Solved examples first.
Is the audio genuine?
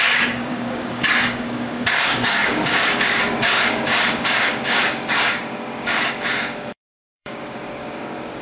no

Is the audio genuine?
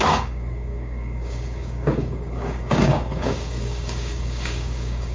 no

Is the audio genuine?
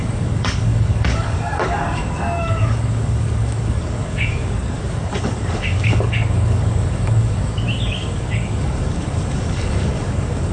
no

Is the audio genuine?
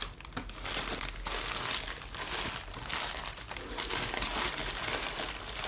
yes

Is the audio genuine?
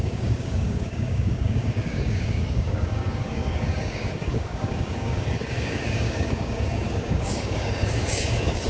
no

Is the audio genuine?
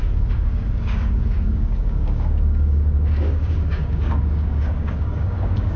no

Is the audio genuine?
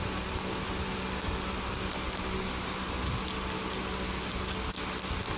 yes